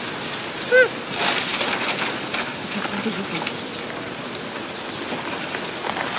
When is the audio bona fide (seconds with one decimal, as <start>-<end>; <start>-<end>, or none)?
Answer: 0.0-6.2

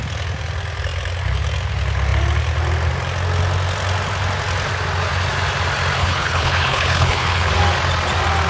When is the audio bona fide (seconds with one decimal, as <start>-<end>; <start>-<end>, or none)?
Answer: 0.0-6.0; 7.5-8.5